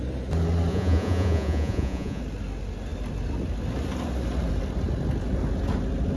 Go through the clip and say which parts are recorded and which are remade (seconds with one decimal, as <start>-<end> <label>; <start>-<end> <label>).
0.0-0.7 recorded; 0.7-2.2 remade; 2.2-6.2 recorded